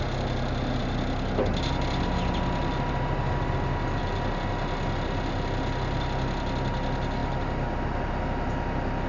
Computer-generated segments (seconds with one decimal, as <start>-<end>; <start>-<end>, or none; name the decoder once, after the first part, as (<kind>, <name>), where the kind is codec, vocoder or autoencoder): none